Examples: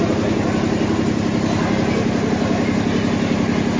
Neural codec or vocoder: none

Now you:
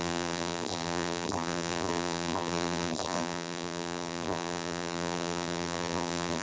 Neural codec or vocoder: vocoder, BigVGAN v2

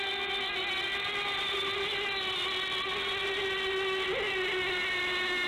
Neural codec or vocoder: none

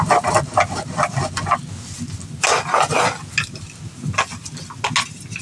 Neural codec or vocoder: none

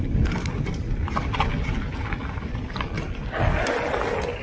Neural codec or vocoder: none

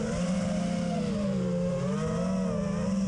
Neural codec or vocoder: none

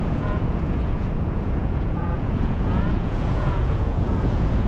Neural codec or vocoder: vocoder, Vocos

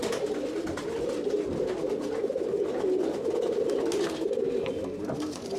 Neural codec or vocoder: none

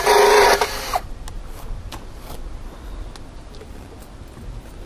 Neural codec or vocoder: none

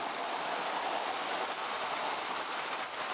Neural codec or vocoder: vocoder, BigVGAN v2